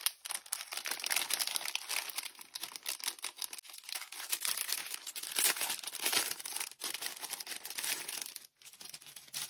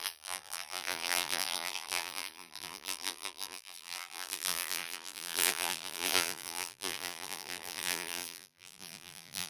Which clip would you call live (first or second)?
first